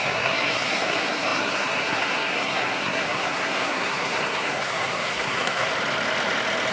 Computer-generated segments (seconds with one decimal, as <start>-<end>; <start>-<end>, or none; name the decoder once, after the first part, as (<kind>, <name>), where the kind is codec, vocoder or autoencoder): 0.0-5.7 (codec, SNAC)